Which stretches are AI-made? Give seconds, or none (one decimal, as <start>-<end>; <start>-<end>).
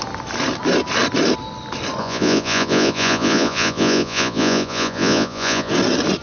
2.0-5.7